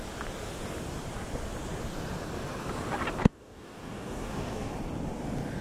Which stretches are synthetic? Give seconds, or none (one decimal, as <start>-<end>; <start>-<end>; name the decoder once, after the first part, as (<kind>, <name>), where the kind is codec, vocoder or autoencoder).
3.2-4.7 (codec, DAC)